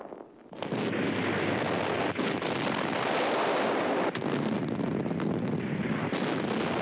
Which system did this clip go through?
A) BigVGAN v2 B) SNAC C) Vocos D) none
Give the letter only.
D